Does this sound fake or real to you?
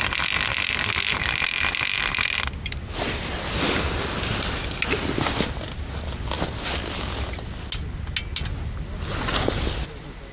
real